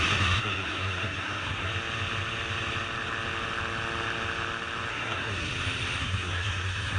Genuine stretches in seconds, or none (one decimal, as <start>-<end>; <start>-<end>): 1.7-4.9; 5.5-6.0

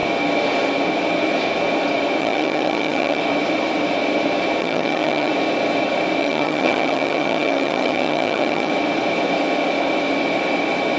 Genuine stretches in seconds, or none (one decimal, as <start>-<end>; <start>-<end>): 0.0-2.2; 3.2-4.6; 5.3-6.2; 8.7-11.0

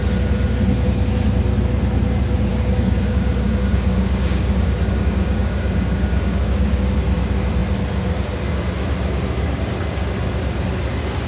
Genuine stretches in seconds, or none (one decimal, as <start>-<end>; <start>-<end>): 0.0-2.5; 6.7-11.3

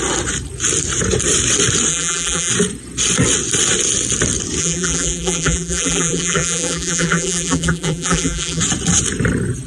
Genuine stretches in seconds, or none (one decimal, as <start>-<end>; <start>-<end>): 0.0-1.9; 2.5-4.6; 8.6-9.7